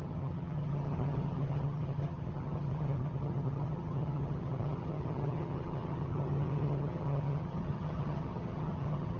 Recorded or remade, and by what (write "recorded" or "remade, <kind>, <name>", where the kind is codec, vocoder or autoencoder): remade, vocoder, HiFi-GAN